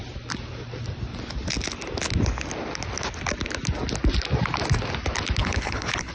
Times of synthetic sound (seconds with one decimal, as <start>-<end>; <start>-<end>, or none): 5.4-6.1